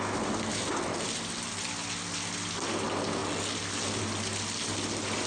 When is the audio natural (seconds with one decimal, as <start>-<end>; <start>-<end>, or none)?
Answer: 0.0-5.3